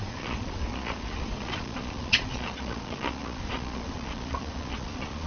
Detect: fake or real fake